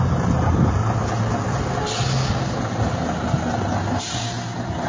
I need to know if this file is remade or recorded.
recorded